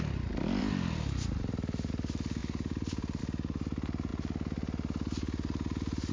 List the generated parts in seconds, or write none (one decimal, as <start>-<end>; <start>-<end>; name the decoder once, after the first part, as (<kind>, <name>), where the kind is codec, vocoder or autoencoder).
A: 0.6-1.9 (vocoder, BigVGAN v2); 2.4-3.2